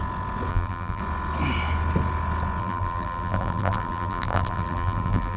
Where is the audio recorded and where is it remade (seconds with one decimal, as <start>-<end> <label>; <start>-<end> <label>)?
0.0-0.5 recorded; 0.5-1.0 remade; 1.0-2.6 recorded; 2.6-5.4 remade